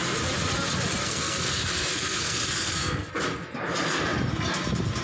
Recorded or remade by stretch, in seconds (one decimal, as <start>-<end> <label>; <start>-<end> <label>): 0.0-1.0 recorded; 1.0-3.1 remade; 3.1-5.0 recorded